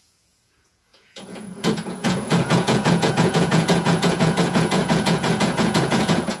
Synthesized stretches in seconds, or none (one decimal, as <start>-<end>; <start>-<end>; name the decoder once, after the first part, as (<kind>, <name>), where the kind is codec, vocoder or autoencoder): 0.0-6.4 (vocoder, Vocos)